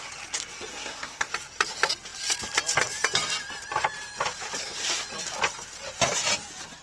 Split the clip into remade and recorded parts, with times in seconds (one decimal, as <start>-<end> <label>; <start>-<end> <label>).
0.0-0.7 recorded; 0.7-1.3 remade; 1.3-6.8 recorded